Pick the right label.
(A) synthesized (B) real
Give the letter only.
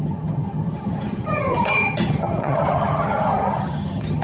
A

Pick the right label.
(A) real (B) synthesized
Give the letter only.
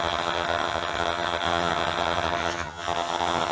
B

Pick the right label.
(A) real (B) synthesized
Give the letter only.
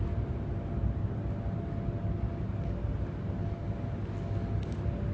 A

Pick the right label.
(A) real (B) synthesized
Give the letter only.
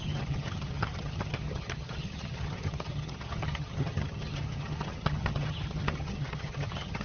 B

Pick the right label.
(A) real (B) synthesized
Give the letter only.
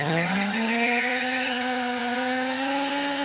B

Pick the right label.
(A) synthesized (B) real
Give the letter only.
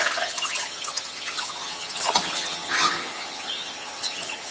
A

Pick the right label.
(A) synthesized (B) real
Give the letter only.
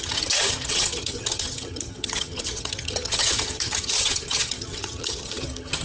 A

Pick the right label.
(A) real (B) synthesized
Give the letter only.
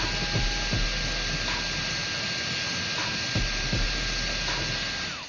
A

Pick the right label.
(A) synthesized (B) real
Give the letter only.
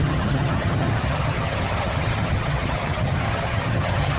A